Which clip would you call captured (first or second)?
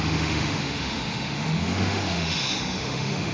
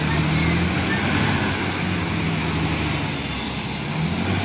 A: second